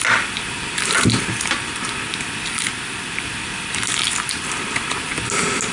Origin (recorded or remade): recorded